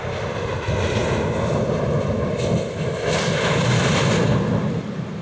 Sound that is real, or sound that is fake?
real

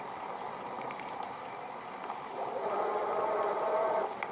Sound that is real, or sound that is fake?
fake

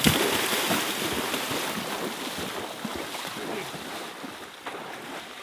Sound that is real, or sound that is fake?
real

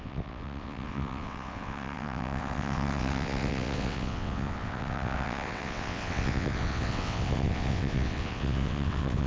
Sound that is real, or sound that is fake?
fake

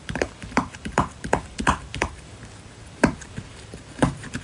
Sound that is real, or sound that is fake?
fake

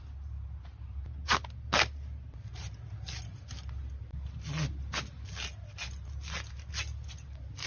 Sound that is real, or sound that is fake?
real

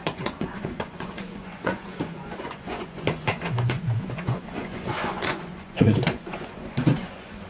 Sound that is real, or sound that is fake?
fake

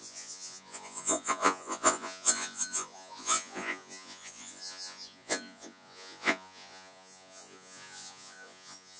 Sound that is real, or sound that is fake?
fake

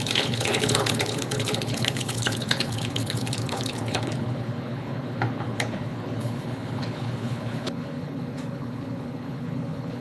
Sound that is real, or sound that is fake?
fake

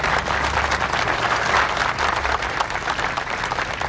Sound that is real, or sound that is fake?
fake